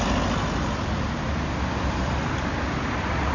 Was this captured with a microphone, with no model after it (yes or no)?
yes